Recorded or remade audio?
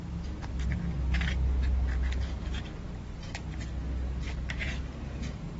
recorded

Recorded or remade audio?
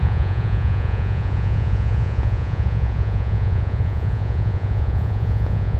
remade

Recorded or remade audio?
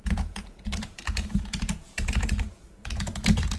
remade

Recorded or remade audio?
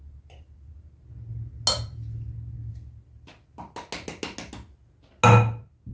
recorded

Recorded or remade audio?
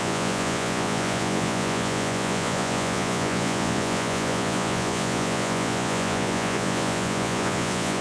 remade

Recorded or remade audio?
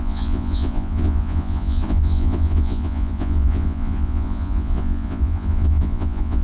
remade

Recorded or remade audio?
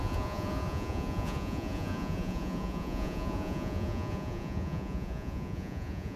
remade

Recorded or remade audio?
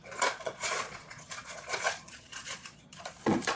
remade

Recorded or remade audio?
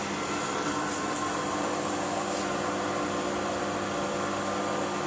recorded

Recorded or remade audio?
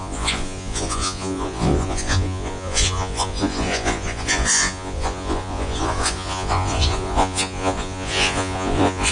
remade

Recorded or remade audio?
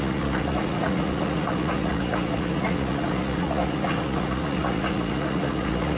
remade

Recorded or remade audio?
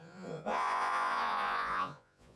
remade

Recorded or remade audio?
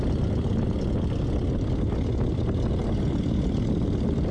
recorded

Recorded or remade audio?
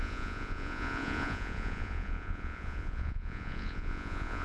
remade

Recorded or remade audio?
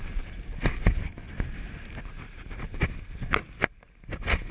recorded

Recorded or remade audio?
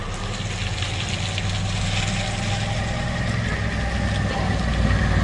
recorded